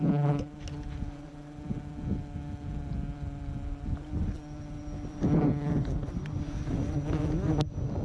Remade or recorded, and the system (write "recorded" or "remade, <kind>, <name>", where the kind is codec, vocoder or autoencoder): recorded